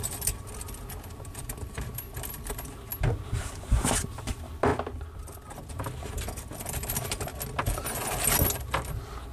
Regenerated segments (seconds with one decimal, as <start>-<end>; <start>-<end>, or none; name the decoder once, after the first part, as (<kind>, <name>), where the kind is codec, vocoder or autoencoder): 0.0-2.9 (vocoder, BigVGAN v2); 3.5-7.3; 8.9-9.3